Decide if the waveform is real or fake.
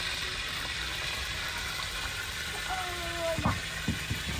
real